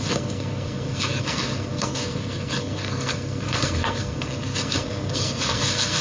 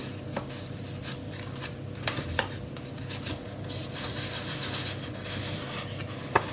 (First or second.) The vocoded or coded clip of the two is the first